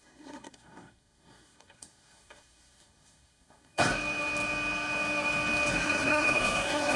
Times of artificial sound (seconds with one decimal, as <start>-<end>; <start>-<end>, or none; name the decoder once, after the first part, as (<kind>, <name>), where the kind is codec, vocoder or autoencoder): 0.0-3.9 (codec, SNAC); 5.7-7.0